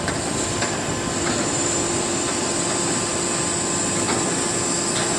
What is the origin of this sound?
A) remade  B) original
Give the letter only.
B